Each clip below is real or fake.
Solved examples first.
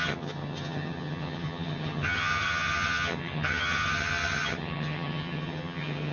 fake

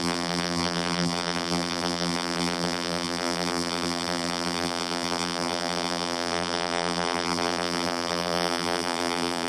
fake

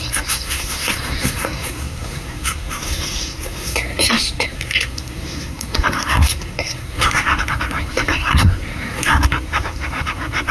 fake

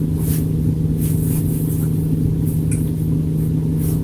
real